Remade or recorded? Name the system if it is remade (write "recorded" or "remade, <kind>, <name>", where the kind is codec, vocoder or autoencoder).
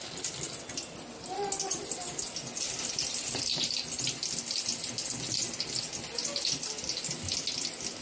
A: recorded